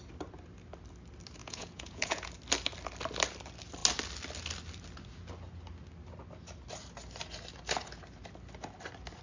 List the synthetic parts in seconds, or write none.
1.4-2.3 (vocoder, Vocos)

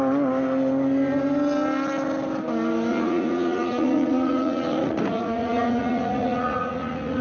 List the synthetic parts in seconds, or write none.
2.9-7.2 (vocoder, Vocos)

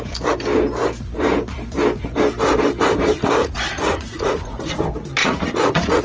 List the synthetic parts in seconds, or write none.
3.4-4.7 (vocoder, Vocos); 5.2-6.0

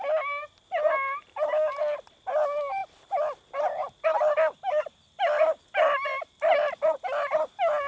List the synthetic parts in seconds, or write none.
none

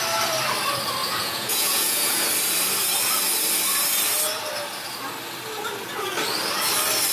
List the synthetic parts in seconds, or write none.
1.0-2.2 (vocoder, Vocos)

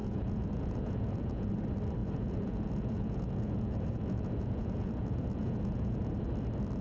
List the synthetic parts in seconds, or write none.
0.0-1.5 (vocoder, Vocos); 2.0-6.1